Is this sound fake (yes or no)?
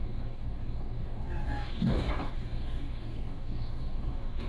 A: yes